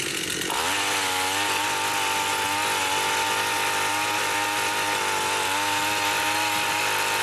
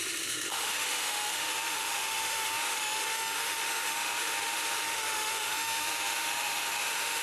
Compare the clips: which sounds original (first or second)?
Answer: first